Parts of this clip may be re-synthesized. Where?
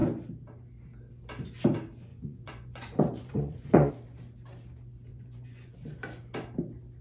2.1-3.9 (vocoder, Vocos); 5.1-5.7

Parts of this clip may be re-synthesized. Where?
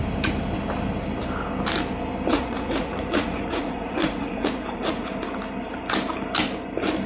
2.3-5.1 (vocoder, Vocos)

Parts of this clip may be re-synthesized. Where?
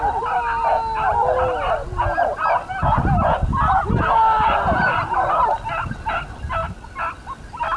3.8-5.5 (vocoder, BigVGAN v2)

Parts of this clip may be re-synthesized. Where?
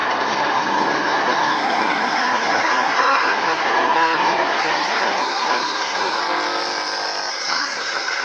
0.0-6.2 (codec, SNAC); 7.3-8.2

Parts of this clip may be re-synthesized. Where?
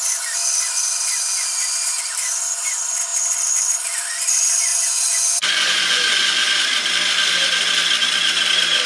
4.7-6.5 (vocoder, Vocos)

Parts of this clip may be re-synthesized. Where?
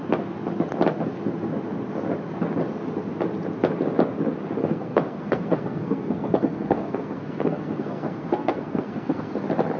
4.6-9.3 (codec, SNAC)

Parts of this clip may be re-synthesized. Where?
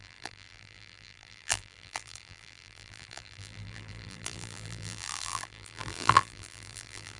0.0-7.2 (vocoder, BigVGAN v2)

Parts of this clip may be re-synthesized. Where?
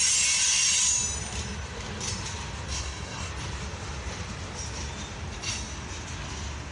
2.7-3.3 (codec, SNAC)